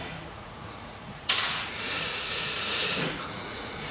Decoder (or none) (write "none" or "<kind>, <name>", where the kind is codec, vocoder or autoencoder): vocoder, Vocos